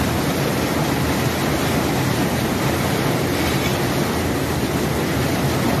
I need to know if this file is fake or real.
real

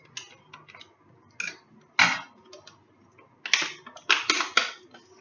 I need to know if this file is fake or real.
real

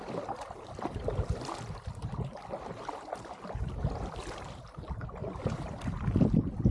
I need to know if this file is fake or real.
real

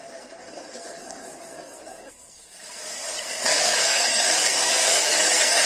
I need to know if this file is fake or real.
fake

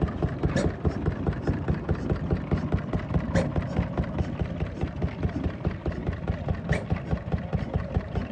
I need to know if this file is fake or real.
real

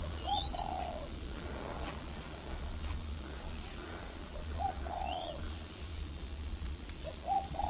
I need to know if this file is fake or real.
fake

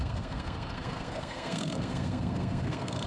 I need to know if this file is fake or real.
fake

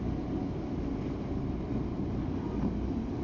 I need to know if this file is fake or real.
real